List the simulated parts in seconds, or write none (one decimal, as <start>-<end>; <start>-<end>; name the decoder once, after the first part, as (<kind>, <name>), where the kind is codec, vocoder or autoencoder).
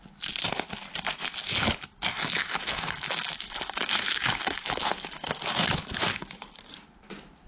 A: 2.1-6.6 (autoencoder, DAC-VAE)